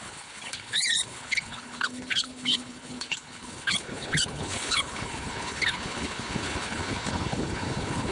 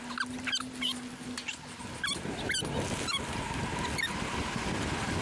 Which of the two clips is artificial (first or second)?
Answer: first